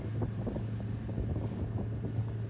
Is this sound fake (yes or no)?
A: no